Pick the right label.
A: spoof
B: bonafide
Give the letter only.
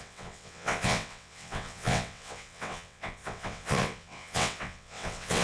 A